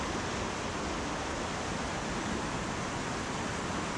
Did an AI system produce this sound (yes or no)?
no